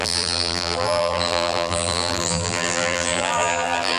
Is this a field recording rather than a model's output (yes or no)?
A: no